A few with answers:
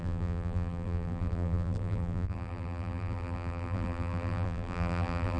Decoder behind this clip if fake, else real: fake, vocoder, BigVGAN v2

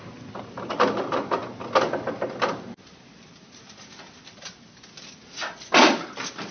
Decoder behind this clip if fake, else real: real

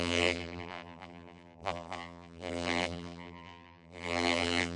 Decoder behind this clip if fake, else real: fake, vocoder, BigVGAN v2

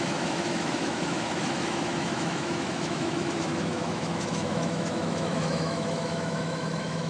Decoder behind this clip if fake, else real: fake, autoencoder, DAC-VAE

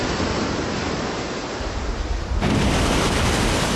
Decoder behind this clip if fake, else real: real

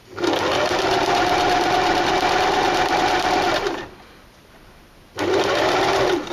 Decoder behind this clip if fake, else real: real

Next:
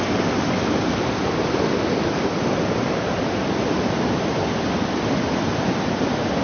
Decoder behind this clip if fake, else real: real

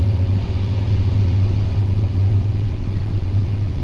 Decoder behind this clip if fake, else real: fake, vocoder, WaveNeXt